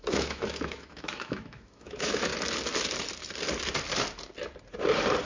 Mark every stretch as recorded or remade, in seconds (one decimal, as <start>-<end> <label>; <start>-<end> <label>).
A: 0.0-2.3 remade; 2.3-5.3 recorded